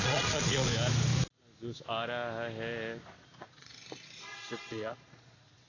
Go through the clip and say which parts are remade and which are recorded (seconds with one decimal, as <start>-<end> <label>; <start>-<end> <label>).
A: 0.0-0.7 remade; 0.7-3.4 recorded; 3.4-5.7 remade